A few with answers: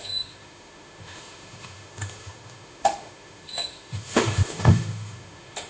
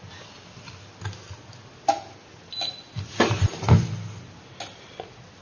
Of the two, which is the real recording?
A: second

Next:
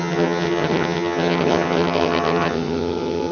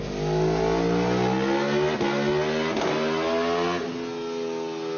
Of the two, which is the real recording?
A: second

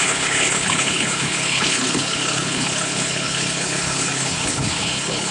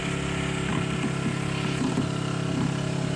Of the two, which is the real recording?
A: second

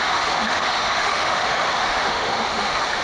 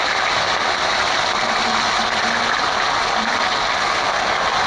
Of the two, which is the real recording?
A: second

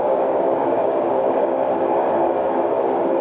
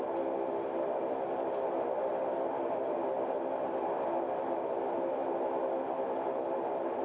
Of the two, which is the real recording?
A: second